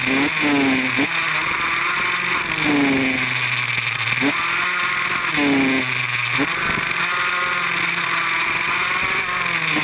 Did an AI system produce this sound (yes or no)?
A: no